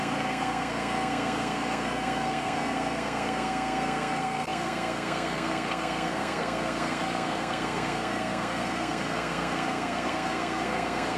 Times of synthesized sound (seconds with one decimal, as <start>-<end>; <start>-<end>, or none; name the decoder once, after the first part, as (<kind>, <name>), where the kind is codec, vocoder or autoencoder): 0.0-11.2 (codec, SNAC)

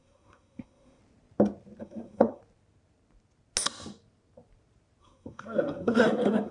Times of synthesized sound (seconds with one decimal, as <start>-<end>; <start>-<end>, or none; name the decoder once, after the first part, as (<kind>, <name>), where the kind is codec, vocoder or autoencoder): 0.0-1.0 (codec, SNAC); 1.8-2.4; 5.0-6.5

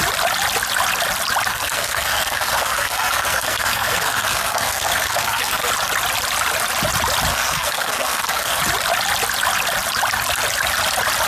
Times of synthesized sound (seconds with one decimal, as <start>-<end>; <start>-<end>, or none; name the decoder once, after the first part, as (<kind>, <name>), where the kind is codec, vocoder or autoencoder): 1.5-5.7 (codec, SNAC); 7.3-8.6

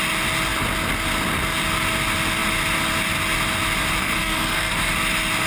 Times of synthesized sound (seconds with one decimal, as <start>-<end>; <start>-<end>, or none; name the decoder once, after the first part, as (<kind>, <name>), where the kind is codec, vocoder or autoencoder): 4.0-4.9 (codec, SNAC)